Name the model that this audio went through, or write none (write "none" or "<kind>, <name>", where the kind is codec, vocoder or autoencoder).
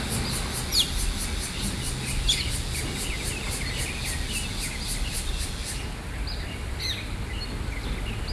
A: none